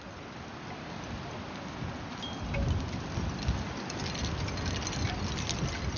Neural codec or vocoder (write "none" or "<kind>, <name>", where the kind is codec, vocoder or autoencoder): none